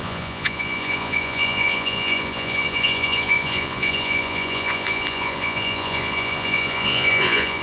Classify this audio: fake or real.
fake